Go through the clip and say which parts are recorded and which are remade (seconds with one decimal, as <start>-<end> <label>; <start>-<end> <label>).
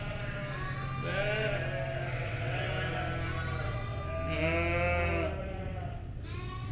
0.0-0.4 remade; 0.4-2.1 recorded; 2.1-2.7 remade; 2.7-3.6 recorded; 3.6-4.0 remade; 4.0-5.4 recorded; 5.4-6.7 remade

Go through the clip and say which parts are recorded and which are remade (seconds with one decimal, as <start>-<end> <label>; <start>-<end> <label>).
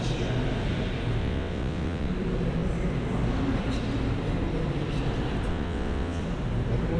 0.0-1.2 recorded; 1.2-2.1 remade; 2.1-5.5 recorded; 5.5-6.2 remade; 6.2-7.0 recorded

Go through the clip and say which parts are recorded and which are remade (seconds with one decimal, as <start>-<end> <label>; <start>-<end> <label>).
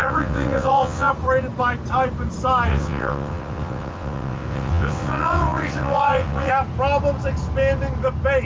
0.0-1.1 remade; 1.1-2.7 recorded; 2.7-6.5 remade; 6.5-8.5 recorded